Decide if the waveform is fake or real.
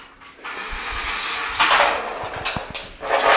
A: real